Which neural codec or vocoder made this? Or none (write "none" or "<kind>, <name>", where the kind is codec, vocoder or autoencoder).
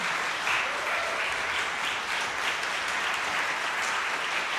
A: none